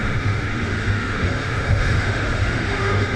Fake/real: fake